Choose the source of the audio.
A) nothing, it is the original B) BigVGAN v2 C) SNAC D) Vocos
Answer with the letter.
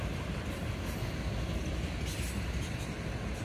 A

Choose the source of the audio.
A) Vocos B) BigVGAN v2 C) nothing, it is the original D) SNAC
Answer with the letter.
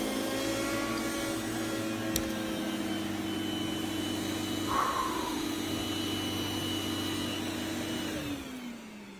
C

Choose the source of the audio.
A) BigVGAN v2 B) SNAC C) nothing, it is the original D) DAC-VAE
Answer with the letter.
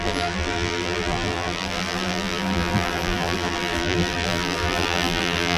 A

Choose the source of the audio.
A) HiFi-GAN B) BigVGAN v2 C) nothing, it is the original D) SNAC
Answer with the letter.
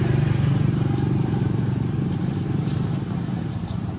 B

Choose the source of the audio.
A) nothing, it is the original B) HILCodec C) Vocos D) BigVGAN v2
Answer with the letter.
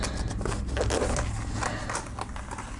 A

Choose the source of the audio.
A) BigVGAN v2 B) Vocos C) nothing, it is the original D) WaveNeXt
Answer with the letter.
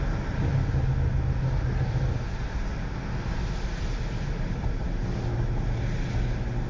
C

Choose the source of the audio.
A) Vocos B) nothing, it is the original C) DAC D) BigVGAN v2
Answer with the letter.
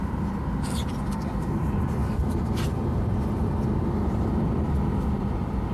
D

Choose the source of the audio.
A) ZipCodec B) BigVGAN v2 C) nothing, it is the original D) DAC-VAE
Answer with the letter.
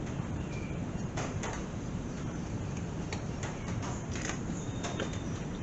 B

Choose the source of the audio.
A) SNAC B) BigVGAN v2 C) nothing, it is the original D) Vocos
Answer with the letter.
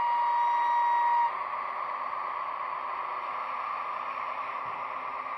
C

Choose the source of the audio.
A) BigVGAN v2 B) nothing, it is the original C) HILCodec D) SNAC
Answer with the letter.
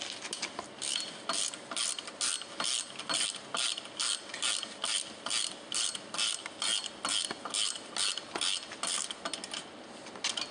B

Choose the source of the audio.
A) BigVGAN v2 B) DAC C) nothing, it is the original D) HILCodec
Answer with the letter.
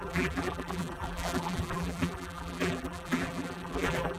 A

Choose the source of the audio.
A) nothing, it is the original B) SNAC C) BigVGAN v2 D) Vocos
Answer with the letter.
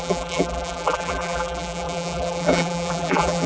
C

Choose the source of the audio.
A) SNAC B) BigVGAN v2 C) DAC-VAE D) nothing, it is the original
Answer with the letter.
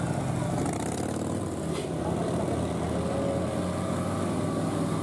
D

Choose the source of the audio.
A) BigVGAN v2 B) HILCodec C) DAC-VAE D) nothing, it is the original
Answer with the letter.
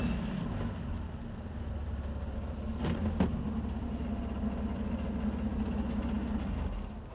D